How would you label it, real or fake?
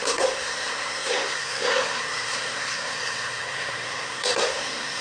fake